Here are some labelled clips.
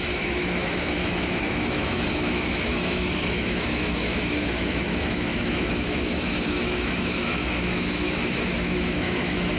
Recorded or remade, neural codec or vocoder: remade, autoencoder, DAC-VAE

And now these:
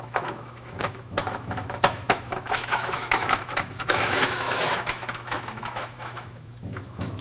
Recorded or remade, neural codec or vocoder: remade, autoencoder, DAC-VAE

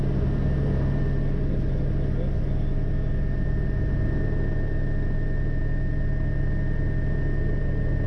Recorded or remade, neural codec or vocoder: recorded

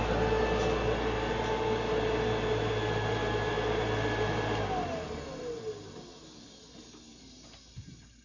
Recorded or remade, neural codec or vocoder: recorded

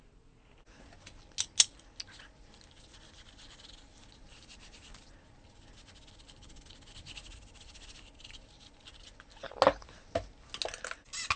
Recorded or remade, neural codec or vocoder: recorded